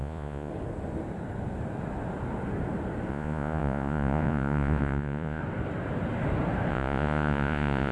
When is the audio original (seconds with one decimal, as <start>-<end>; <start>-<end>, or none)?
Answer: 0.5-3.1; 5.4-6.7